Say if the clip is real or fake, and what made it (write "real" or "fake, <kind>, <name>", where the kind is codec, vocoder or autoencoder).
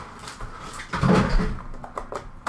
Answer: real